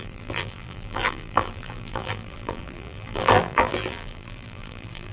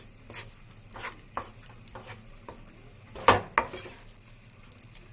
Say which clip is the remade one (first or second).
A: first